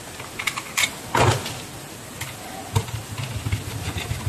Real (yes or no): no